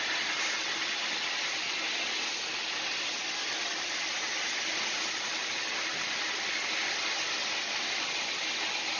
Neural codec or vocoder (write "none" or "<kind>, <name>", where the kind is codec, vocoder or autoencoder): none